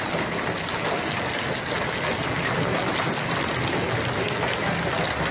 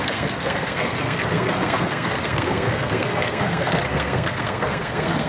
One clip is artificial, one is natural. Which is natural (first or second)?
first